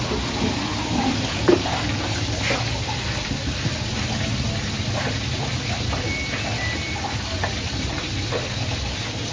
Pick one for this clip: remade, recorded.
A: recorded